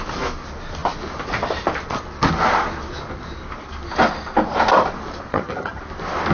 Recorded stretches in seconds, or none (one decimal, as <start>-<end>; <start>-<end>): 0.0-5.3; 5.8-6.3